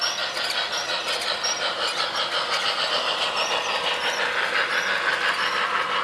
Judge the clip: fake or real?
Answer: real